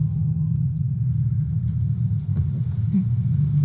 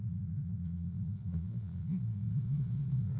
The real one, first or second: first